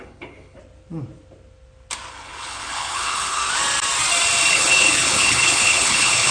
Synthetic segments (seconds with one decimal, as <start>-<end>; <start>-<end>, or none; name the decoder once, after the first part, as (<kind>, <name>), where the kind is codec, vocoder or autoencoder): 0.0-0.6 (codec, HILCodec); 2.1-3.4; 4.5-6.3